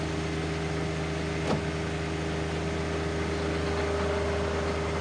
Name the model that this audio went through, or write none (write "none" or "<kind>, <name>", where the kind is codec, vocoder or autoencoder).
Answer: none